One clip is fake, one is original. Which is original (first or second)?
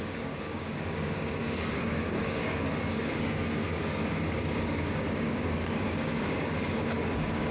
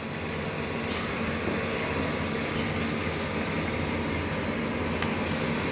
second